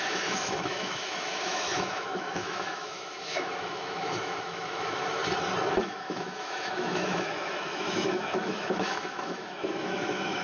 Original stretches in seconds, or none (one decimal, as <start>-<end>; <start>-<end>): 5.2-5.8